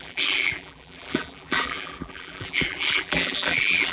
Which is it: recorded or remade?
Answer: remade